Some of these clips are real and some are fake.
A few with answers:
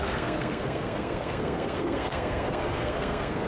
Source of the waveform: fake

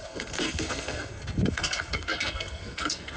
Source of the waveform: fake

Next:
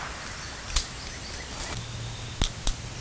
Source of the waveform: real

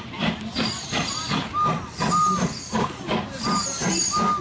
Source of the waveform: real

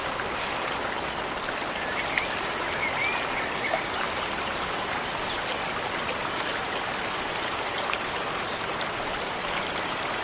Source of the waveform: real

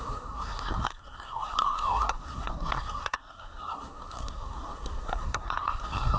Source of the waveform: fake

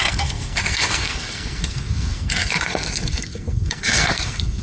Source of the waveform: fake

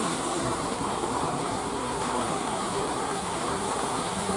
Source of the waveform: fake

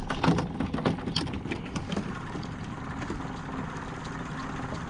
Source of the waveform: real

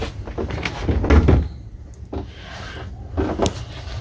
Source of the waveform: real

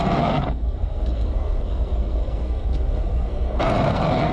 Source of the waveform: fake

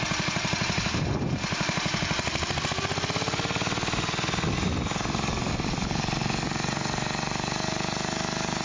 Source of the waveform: real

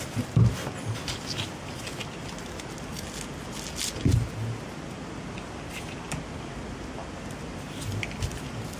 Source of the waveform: real